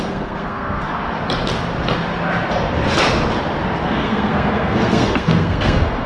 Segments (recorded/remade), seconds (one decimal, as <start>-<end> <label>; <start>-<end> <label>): 0.0-0.9 remade; 0.9-3.8 recorded; 3.8-6.1 remade